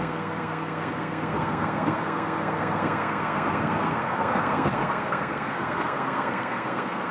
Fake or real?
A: fake